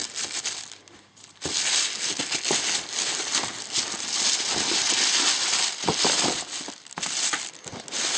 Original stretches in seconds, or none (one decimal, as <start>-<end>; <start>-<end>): 0.0-8.2